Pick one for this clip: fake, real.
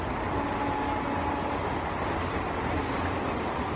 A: real